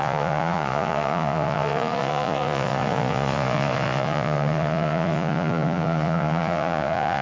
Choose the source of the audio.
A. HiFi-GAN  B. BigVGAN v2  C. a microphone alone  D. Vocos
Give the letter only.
D